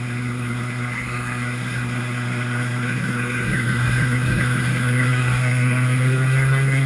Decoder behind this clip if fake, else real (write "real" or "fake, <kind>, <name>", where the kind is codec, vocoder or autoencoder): fake, codec, SNAC